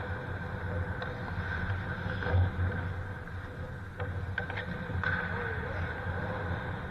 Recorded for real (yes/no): yes